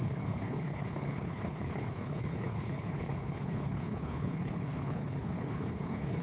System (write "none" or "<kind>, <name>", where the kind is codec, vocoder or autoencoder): codec, HILCodec